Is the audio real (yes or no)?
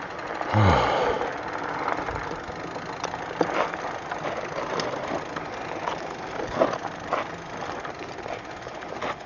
yes